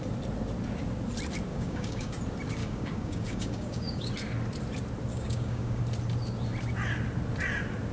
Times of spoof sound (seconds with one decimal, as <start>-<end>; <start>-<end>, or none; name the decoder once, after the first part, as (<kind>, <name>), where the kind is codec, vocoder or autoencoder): 1.5-2.1 (codec, DAC); 2.6-4.1; 5.1-5.8